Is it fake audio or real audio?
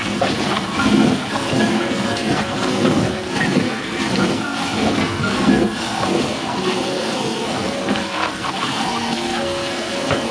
fake